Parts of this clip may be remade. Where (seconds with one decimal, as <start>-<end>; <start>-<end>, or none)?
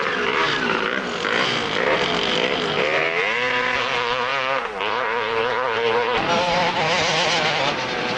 0.0-4.3; 4.9-8.2